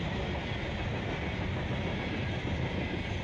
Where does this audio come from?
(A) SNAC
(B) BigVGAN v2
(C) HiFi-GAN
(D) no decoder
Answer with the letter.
D